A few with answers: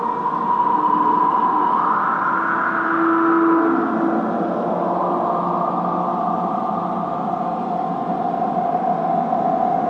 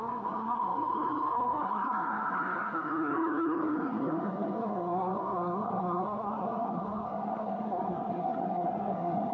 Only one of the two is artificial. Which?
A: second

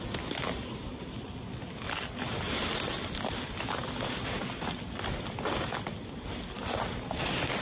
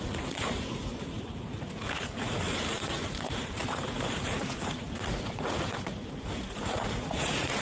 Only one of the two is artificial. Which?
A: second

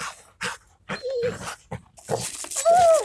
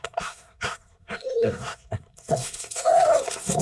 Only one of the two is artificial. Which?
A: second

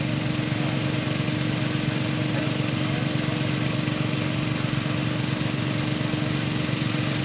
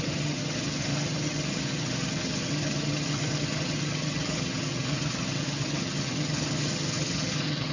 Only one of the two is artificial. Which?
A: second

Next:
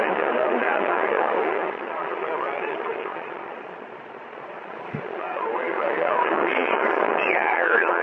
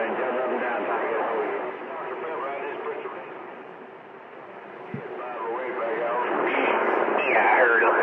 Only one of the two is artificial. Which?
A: first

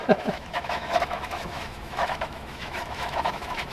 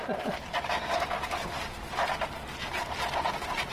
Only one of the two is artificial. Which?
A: first